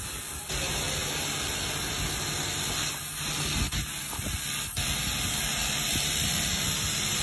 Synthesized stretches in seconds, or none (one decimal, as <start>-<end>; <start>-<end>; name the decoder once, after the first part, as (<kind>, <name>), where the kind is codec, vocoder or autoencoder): none